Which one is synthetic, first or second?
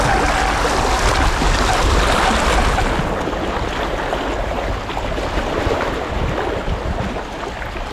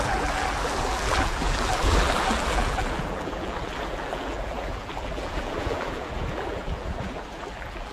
second